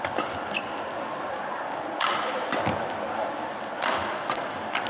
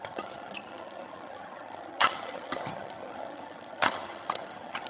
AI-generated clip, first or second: second